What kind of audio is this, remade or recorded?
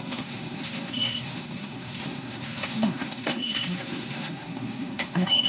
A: remade